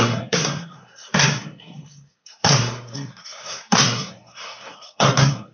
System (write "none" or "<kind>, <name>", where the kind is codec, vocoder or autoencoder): codec, SNAC